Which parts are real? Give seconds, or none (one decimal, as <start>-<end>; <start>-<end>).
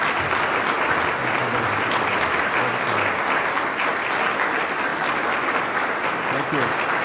0.0-7.0